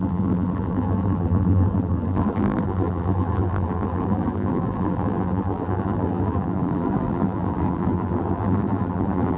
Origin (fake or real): fake